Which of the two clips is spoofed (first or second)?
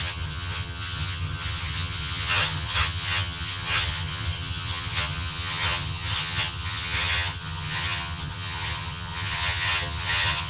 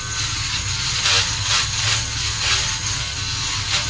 first